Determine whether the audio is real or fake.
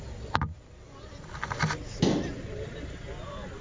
real